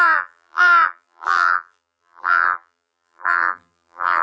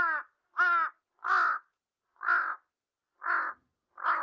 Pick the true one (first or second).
second